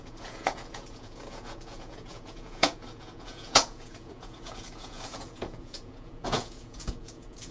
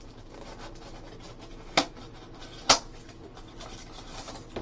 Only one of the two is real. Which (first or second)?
second